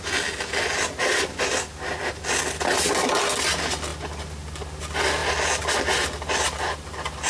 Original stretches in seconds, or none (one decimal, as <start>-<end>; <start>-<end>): 0.0-7.3